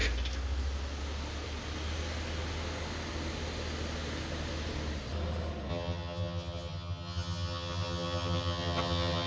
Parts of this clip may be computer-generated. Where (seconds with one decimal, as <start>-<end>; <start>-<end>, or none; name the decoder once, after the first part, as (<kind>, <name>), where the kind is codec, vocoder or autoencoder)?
5.7-9.3 (vocoder, HiFi-GAN)